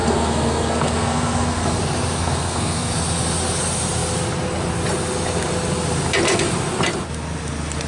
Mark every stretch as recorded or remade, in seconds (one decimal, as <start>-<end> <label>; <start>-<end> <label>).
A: 0.0-1.8 remade; 1.8-2.2 recorded; 2.2-2.9 remade; 2.9-7.9 recorded